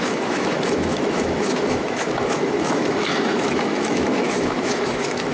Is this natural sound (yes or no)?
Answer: no